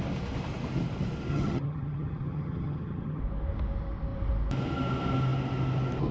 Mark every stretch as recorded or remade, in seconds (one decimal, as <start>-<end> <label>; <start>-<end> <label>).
0.0-1.3 recorded; 1.3-3.2 remade; 3.2-6.1 recorded